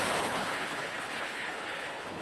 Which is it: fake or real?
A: fake